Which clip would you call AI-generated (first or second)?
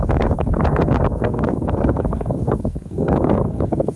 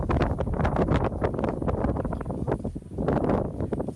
first